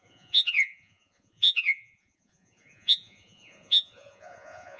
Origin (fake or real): fake